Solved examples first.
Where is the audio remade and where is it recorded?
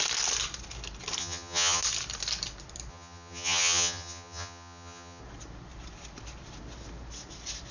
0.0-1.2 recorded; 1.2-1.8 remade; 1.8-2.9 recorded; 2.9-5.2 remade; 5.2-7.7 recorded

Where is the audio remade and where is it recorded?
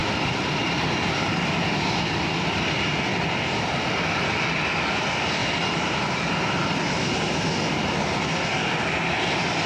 0.0-0.8 remade; 0.8-3.1 recorded; 3.1-3.6 remade; 3.6-5.4 recorded; 5.4-6.9 remade; 6.9-9.7 recorded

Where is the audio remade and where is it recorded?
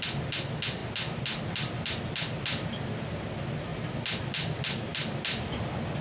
0.0-6.0 recorded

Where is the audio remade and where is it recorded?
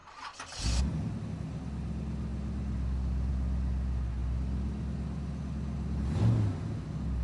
0.0-7.2 recorded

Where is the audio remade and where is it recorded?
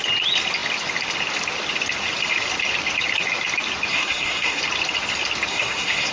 0.0-3.9 recorded; 3.9-4.6 remade; 4.6-5.5 recorded; 5.5-6.1 remade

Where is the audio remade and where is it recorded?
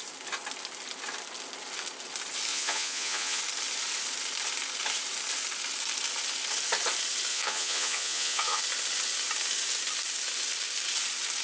0.0-2.5 recorded; 2.5-3.4 remade; 3.4-7.3 recorded; 7.3-8.6 remade; 8.6-11.4 recorded